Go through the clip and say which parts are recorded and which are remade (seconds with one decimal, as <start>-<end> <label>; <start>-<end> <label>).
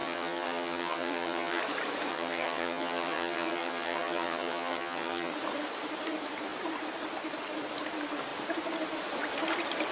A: 0.0-1.6 remade; 1.6-2.1 recorded; 2.1-5.3 remade; 5.3-9.9 recorded